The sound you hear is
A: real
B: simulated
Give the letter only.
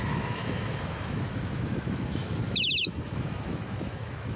B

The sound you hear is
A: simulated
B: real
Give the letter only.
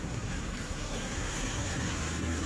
A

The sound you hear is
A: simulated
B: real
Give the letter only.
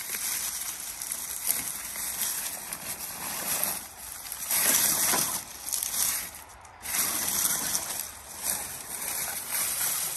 B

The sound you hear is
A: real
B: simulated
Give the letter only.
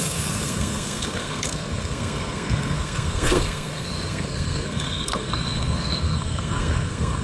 B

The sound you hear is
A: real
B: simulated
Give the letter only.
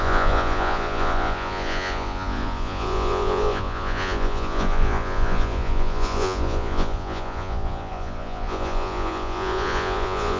B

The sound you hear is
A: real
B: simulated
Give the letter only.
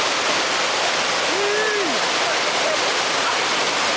A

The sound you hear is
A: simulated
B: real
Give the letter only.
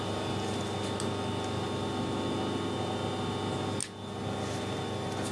B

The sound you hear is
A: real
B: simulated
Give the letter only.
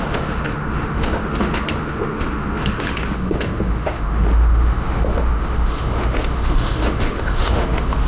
B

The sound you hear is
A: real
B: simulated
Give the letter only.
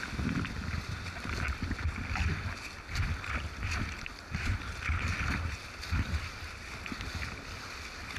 A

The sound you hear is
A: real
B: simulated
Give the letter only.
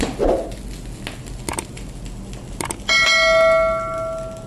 A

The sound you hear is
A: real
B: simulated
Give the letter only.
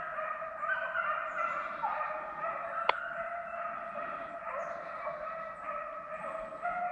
A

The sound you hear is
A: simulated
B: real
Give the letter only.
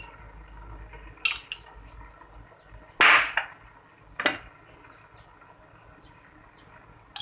B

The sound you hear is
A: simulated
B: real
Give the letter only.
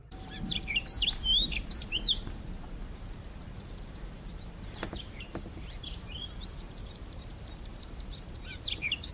A